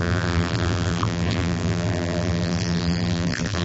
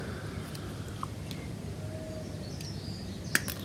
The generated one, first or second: first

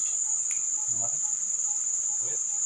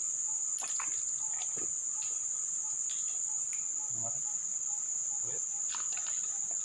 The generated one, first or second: first